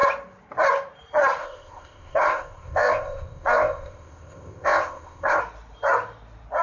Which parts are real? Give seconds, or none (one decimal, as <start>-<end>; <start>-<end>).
0.0-1.4; 5.4-6.6